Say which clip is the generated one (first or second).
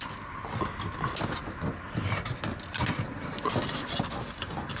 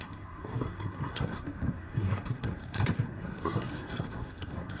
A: second